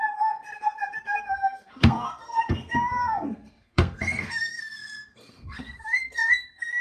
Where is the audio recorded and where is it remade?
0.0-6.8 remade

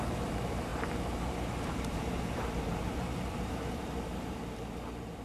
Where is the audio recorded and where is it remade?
0.0-5.2 remade

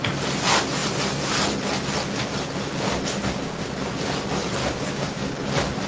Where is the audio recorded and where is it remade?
0.0-4.6 recorded; 4.6-5.3 remade; 5.3-5.9 recorded